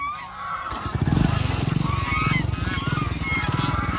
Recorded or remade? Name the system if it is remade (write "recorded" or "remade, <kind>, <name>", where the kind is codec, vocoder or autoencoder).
recorded